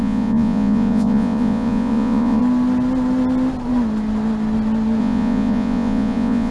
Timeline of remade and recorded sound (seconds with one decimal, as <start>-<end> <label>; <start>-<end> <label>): 0.0-2.4 remade; 2.4-5.0 recorded; 5.0-6.5 remade